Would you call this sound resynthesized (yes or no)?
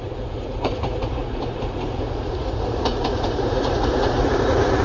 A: yes